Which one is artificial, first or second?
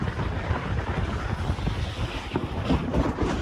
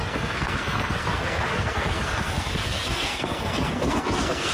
second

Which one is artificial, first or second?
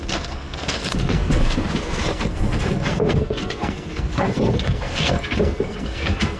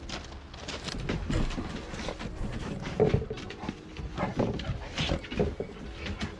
first